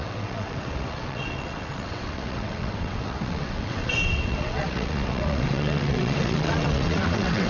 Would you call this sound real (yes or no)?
no